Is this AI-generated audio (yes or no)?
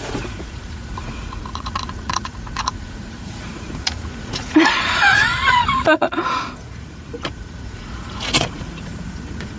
yes